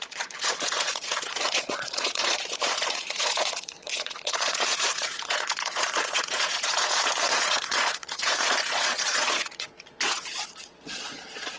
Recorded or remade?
remade